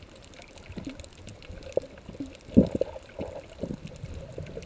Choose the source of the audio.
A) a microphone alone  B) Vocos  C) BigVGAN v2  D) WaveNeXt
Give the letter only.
A